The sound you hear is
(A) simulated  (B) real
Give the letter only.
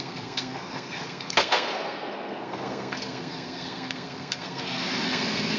A